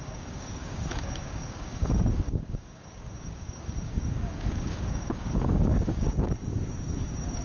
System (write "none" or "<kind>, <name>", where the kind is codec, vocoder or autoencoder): codec, DAC